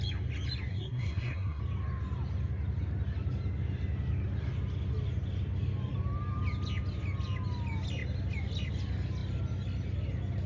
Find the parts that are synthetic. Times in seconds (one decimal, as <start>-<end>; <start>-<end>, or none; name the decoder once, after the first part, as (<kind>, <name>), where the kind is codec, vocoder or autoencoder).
0.7-1.6 (codec, SNAC)